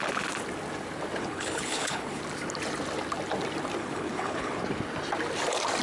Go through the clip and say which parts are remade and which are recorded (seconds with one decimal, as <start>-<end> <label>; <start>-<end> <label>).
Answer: 0.0-1.2 recorded; 1.2-2.2 remade; 2.2-3.8 recorded; 3.8-4.6 remade; 4.6-5.8 recorded